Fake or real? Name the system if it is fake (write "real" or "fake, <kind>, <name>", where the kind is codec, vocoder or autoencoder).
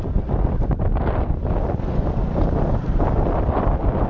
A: fake, vocoder, BigVGAN v2